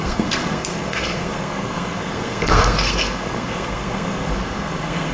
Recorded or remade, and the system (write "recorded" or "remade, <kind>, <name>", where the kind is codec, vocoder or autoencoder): remade, codec, SNAC